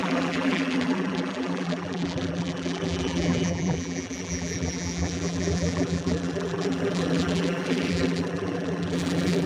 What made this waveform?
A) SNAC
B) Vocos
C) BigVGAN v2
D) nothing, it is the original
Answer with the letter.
C